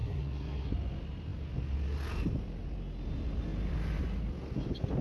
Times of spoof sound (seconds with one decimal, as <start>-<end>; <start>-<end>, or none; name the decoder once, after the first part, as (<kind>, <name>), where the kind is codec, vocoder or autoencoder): 0.0-0.7 (codec, SNAC)